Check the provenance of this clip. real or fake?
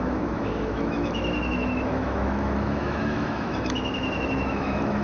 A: fake